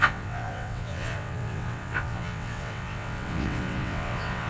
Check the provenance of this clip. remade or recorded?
remade